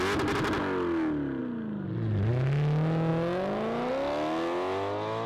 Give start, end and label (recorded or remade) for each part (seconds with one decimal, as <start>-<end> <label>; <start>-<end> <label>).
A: 0.0-5.3 recorded